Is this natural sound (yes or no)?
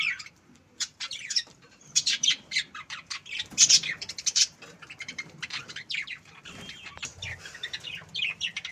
no